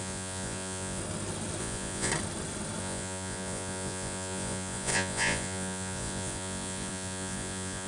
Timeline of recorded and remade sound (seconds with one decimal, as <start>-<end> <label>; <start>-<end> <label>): 0.0-1.0 remade; 1.0-1.6 recorded; 1.6-2.1 remade; 2.1-2.8 recorded; 2.8-7.9 remade